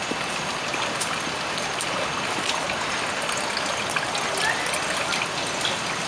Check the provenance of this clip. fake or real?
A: real